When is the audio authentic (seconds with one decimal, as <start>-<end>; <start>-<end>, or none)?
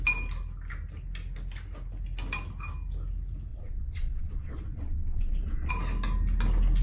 0.0-3.5; 5.7-6.8